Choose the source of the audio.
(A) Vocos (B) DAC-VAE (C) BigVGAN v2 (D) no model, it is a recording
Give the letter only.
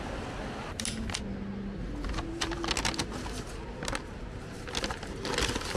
D